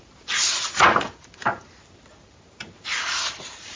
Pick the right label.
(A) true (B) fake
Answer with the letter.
B